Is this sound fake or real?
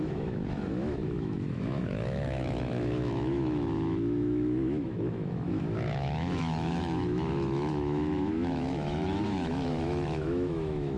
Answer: fake